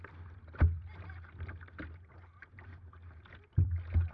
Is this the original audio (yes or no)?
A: yes